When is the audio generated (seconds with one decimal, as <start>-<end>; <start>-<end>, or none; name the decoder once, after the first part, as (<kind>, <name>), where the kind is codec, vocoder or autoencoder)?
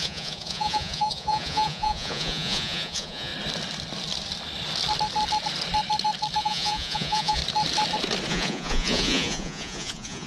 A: 0.0-3.3 (vocoder, Vocos); 6.4-7.4; 8.3-10.3